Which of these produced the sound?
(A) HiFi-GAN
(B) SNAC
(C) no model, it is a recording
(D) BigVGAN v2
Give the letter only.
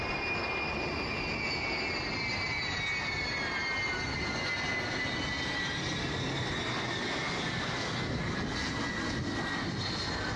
C